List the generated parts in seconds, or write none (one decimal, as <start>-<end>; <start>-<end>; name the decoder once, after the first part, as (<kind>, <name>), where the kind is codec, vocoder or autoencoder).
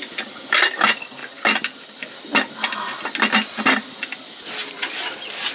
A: none